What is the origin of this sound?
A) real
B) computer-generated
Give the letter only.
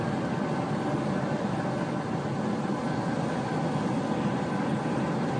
A